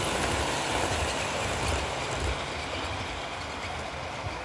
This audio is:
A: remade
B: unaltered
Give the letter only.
B